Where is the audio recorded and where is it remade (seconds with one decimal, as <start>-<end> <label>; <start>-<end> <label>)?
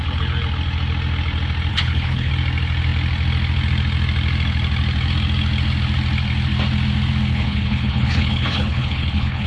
0.0-1.7 recorded; 1.7-2.3 remade; 2.3-7.3 recorded; 7.3-9.5 remade